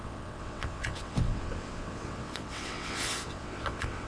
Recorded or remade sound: remade